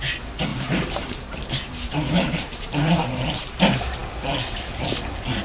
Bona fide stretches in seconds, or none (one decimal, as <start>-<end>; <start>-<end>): 0.0-0.5; 3.4-5.4